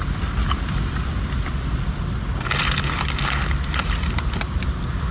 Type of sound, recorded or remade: recorded